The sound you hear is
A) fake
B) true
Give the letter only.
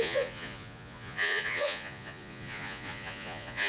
A